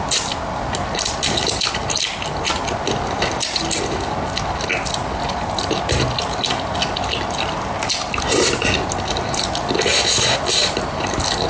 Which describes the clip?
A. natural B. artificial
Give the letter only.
A